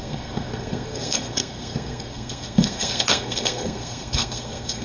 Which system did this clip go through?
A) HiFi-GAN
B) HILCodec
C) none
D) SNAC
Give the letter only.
D